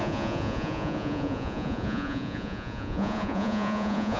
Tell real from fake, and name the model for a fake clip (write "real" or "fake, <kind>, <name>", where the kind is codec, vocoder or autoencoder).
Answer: fake, vocoder, Vocos